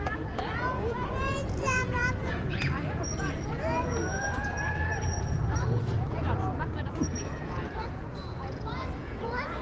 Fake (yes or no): yes